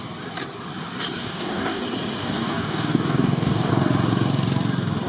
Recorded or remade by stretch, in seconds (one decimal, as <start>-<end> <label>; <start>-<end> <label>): 0.0-1.2 recorded; 1.2-1.8 remade; 1.8-2.2 recorded; 2.2-3.7 remade; 3.7-5.1 recorded